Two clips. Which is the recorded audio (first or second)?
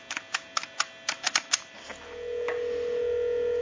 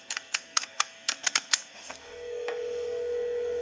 first